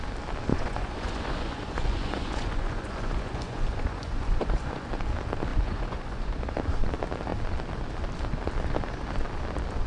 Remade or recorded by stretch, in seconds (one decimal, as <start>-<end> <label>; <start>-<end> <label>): 0.0-0.5 recorded; 0.5-4.9 remade; 4.9-5.5 recorded; 5.5-6.5 remade; 6.5-9.9 recorded